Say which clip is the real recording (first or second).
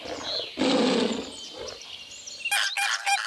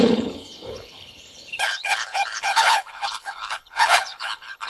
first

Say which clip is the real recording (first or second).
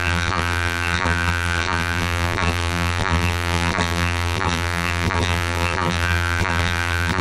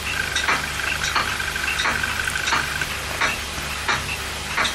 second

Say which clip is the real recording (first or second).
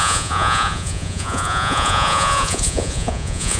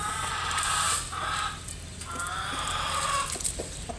second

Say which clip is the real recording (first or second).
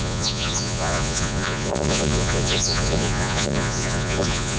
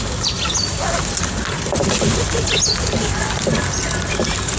second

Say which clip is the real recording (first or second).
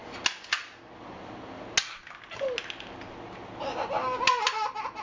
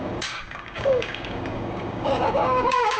first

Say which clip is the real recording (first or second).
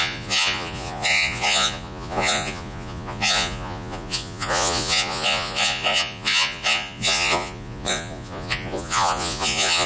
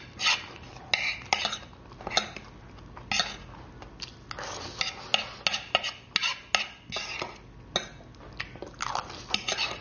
second